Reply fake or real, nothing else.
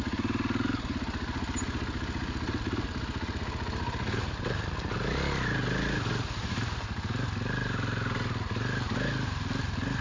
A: real